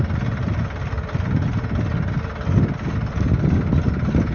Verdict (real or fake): real